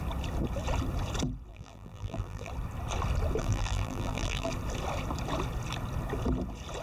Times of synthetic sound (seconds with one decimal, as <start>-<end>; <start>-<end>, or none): 1.5-2.5; 3.4-4.5